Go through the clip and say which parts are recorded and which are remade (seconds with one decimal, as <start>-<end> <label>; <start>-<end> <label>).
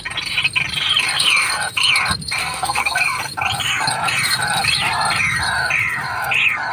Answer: 0.0-2.4 recorded; 2.4-3.0 remade; 3.0-6.7 recorded